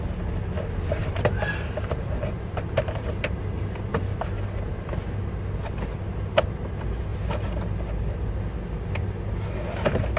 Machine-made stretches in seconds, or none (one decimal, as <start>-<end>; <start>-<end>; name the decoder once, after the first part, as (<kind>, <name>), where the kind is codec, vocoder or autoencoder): 1.0-3.6 (vocoder, BigVGAN v2)